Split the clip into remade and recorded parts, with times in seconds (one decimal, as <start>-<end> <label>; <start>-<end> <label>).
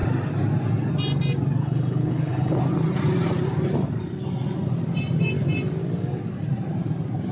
0.0-1.6 recorded; 1.6-2.6 remade; 2.6-7.3 recorded